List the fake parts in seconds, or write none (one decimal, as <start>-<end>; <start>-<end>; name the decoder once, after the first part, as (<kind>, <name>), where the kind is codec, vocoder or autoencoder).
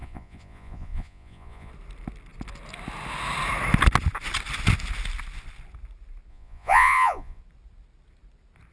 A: 0.0-1.7 (vocoder, Vocos); 6.3-7.4